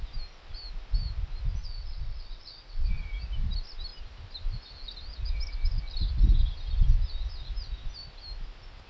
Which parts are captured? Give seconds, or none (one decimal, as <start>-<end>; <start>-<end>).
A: 0.0-1.6; 2.9-8.9